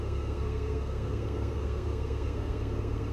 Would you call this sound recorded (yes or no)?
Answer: no